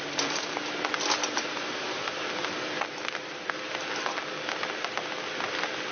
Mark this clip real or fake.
real